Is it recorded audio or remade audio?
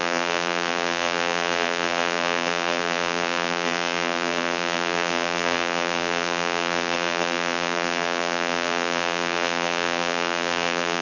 remade